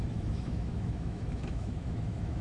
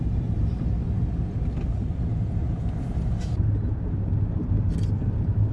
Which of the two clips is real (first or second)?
second